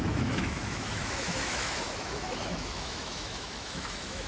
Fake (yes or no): yes